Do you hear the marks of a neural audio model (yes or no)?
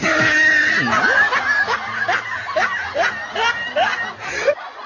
no